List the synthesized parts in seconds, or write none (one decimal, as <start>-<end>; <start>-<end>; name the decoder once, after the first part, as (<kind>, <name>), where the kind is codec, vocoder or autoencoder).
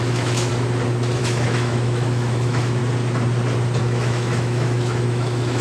0.0-0.5 (autoencoder, DAC-VAE); 1.2-2.8; 3.8-5.6